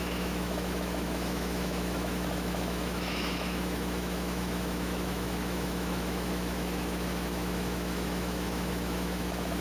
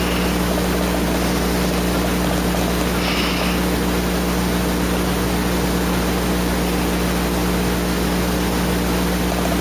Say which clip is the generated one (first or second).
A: first